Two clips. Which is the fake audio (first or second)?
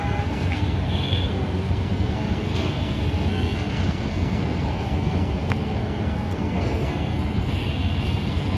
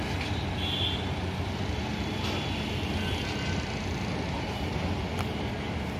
first